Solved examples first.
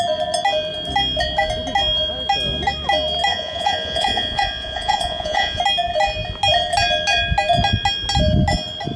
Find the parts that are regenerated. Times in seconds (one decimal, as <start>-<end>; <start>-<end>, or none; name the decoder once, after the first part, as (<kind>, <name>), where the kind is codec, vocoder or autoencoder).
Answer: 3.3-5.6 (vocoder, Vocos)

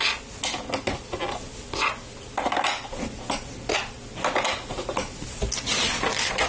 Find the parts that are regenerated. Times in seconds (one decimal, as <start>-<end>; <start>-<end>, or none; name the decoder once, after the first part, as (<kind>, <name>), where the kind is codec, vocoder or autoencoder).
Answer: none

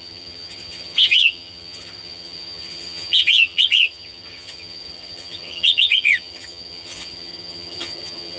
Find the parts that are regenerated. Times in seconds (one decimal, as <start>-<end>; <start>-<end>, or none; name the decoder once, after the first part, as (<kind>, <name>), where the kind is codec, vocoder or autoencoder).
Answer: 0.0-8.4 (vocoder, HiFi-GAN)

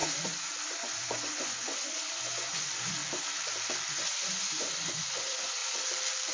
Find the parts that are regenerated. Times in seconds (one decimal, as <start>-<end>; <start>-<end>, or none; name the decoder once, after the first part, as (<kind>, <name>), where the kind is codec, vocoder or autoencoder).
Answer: 0.0-3.0 (vocoder, Vocos); 3.9-5.6